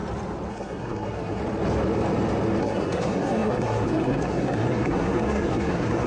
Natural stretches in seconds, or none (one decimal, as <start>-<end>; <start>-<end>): 0.0-0.5; 1.4-2.6